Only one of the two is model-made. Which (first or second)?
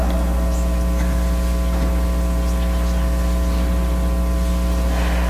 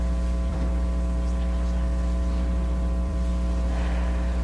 second